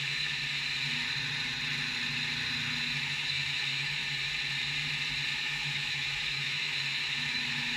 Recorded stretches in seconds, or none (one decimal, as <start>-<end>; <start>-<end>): 0.4-2.8; 4.0-5.3